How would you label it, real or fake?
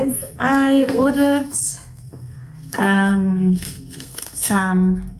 fake